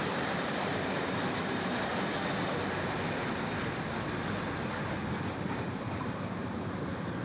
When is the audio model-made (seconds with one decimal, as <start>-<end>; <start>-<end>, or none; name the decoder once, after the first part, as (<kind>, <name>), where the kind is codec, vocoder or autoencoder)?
0.0-1.9 (vocoder, BigVGAN v2); 5.0-7.2